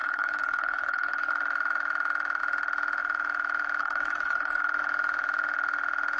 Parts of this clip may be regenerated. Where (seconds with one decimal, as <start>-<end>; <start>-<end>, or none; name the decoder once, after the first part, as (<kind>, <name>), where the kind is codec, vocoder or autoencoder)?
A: 0.0-1.3 (codec, HILCodec); 3.8-4.6